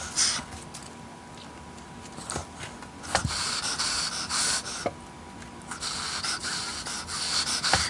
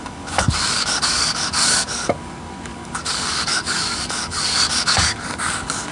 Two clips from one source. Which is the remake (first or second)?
second